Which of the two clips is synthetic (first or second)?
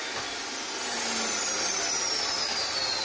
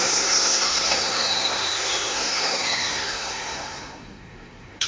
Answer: second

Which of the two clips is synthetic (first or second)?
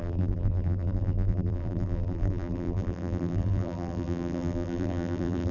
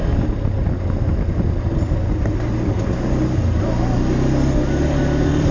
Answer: first